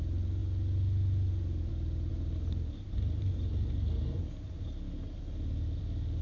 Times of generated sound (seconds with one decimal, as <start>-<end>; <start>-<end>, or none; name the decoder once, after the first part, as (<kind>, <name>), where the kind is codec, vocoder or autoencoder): none